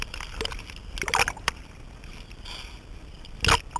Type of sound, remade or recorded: recorded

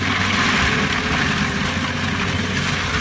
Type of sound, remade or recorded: recorded